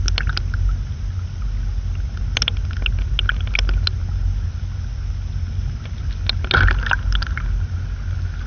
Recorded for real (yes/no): yes